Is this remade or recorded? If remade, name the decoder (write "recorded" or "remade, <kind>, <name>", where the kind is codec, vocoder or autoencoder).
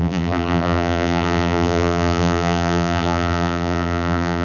remade, vocoder, BigVGAN v2